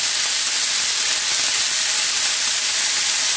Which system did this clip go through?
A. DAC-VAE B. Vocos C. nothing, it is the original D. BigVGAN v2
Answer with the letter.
C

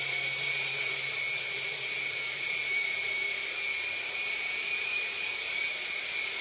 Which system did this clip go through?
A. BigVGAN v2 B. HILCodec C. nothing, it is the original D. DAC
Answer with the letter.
A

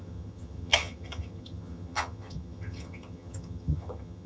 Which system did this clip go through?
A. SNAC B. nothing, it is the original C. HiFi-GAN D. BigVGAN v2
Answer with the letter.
C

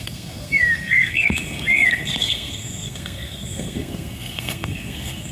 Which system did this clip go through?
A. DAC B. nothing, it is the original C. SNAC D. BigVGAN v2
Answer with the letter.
C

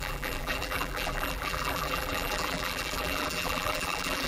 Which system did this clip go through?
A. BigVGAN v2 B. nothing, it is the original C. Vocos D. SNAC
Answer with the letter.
A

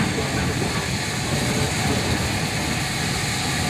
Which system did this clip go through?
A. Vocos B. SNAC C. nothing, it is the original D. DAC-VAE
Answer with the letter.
C